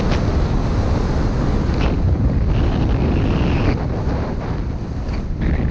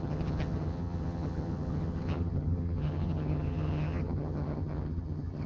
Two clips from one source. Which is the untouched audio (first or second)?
first